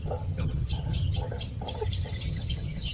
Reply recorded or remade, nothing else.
remade